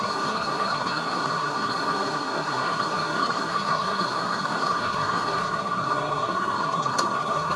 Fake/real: fake